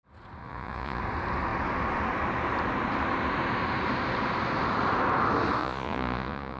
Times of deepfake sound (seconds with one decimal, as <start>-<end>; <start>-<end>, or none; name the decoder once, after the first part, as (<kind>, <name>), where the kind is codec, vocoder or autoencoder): 0.4-1.0 (vocoder, Vocos); 5.6-6.6